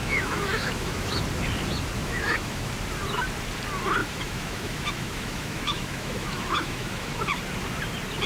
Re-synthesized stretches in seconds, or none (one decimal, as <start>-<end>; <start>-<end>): 0.0-1.2; 2.0-2.7; 4.0-7.2